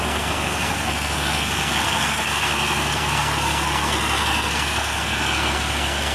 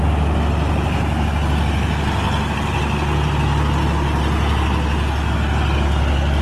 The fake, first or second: first